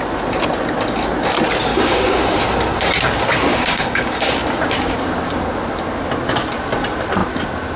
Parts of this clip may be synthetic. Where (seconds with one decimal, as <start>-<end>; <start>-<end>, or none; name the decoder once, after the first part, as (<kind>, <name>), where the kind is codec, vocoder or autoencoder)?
1.7-2.2 (codec, DAC); 3.5-4.3